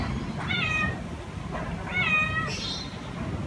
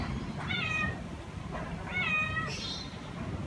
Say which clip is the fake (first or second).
second